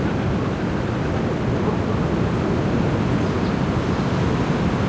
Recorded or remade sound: recorded